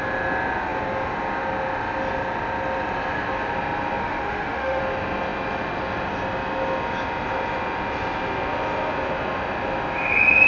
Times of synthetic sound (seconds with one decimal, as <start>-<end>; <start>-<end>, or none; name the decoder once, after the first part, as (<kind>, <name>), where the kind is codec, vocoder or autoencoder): 4.0-4.8 (autoencoder, DAC-VAE)